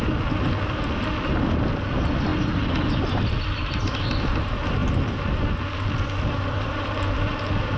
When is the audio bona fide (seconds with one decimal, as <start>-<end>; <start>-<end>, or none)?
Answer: 0.0-7.8